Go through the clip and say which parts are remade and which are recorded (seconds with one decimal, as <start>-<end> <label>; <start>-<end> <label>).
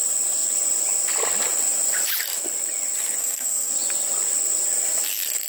0.0-3.2 recorded; 3.2-3.7 remade; 3.7-5.5 recorded